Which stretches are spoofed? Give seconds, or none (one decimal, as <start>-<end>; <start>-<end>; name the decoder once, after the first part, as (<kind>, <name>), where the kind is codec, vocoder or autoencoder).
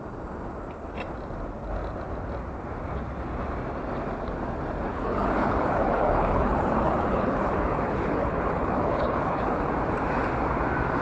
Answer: 4.9-9.7 (codec, HILCodec)